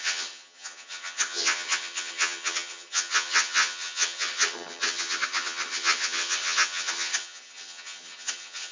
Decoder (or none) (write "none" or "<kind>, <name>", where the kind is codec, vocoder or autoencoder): vocoder, HiFi-GAN